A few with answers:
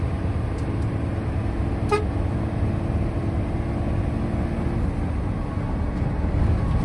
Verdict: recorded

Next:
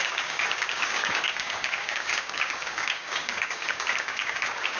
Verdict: remade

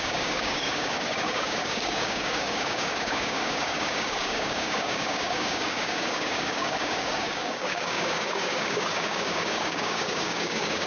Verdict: remade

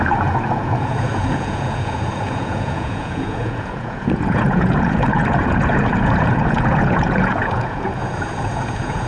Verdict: remade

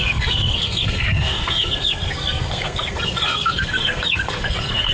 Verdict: remade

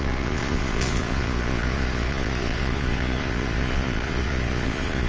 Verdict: remade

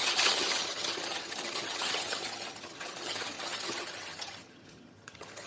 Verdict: remade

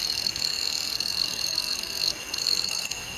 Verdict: remade